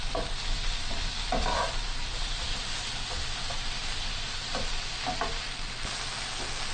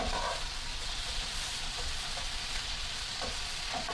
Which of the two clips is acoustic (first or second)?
first